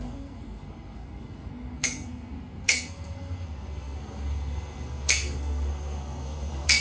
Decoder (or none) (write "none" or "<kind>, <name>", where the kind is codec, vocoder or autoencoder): codec, SNAC